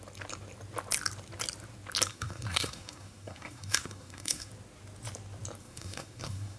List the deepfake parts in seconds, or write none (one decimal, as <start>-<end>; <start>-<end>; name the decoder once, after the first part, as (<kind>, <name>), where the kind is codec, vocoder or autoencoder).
2.1-4.5 (codec, SNAC); 5.6-6.6